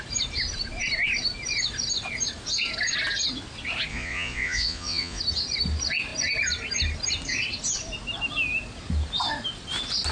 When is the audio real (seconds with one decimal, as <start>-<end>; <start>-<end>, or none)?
0.0-3.9; 5.2-10.1